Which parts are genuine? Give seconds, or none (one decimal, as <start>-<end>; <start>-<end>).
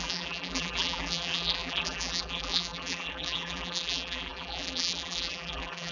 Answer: none